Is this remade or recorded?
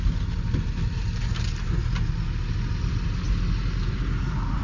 recorded